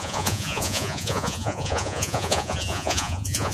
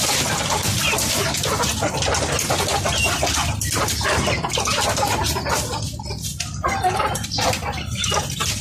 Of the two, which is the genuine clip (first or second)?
second